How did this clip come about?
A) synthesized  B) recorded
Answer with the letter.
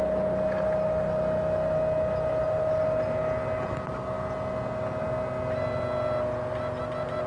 B